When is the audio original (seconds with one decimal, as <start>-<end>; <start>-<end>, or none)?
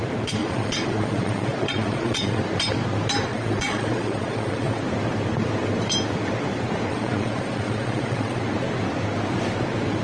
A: 0.0-0.4; 2.4-3.3; 4.8-6.9; 8.4-10.0